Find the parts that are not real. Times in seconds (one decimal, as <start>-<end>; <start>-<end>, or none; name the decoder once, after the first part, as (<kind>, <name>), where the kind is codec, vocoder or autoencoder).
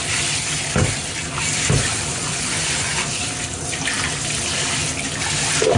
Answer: 2.1-3.2 (vocoder, Vocos)